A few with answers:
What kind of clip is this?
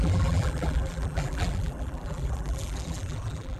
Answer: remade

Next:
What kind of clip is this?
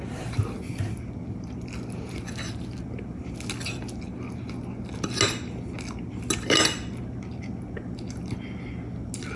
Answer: recorded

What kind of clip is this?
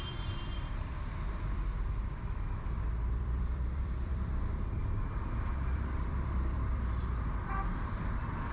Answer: remade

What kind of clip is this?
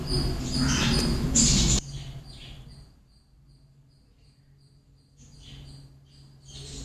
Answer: recorded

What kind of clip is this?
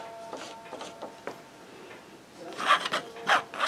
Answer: recorded